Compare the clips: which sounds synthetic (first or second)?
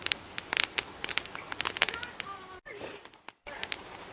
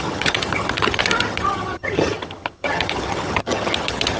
second